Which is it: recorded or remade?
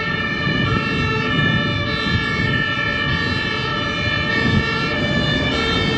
recorded